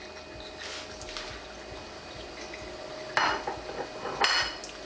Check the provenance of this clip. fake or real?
real